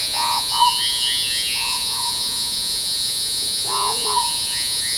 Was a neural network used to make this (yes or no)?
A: yes